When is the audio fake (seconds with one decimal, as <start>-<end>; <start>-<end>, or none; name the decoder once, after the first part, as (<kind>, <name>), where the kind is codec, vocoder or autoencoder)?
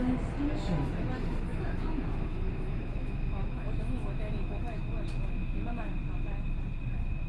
1.5-4.9 (autoencoder, DAC-VAE)